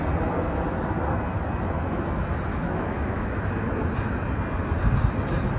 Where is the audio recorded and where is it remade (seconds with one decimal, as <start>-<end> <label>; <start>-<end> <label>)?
0.0-2.5 recorded; 2.5-3.4 remade; 3.4-5.6 recorded